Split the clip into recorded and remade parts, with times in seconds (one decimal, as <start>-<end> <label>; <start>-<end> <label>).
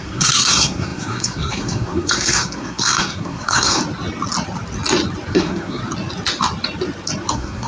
0.0-3.8 remade; 3.8-5.3 recorded; 5.3-5.8 remade; 5.8-7.3 recorded; 7.3-7.7 remade